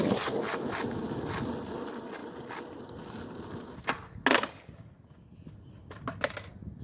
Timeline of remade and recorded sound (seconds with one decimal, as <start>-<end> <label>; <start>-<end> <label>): 0.0-6.8 recorded